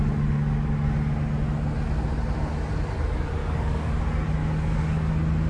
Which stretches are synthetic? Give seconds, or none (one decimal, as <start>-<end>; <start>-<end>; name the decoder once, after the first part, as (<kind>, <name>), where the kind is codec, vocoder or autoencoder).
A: 3.4-4.0 (codec, DAC); 4.4-5.1